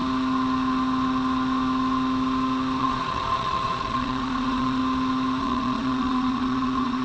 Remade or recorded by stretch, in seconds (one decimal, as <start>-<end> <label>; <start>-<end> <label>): 0.0-2.8 recorded; 2.8-4.8 remade; 4.8-5.4 recorded; 5.4-7.0 remade

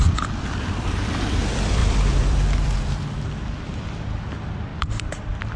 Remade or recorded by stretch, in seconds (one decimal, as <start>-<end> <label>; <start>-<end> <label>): 0.0-5.6 remade

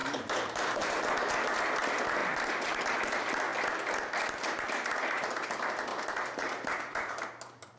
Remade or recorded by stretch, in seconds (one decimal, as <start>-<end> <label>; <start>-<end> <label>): 0.0-1.0 remade; 1.0-2.2 recorded; 2.2-2.8 remade; 2.8-5.9 recorded; 5.9-7.8 remade

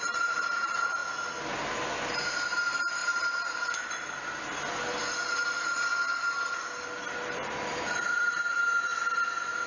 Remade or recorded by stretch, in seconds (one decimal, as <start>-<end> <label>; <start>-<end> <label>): 0.0-1.0 remade; 1.0-2.1 recorded; 2.1-3.0 remade; 3.0-5.0 recorded; 5.0-5.9 remade; 5.9-7.1 recorded; 7.1-8.9 remade; 8.9-9.7 recorded

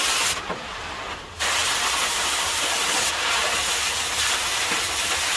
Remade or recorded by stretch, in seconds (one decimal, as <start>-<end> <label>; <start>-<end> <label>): 0.0-5.4 recorded

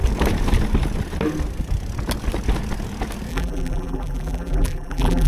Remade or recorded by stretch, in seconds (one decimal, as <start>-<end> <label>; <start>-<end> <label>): 0.0-3.3 recorded; 3.3-5.3 remade

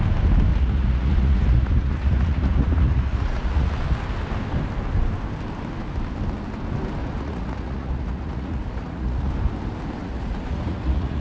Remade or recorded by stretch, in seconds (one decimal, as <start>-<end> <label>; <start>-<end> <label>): 0.0-0.5 recorded; 0.5-3.8 remade; 3.8-7.0 recorded; 7.0-9.3 remade; 9.3-10.0 recorded; 10.0-11.2 remade

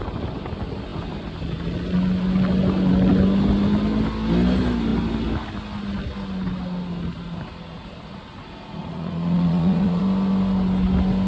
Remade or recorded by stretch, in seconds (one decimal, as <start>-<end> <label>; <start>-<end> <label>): 0.0-8.8 recorded; 8.8-10.0 remade; 10.0-11.3 recorded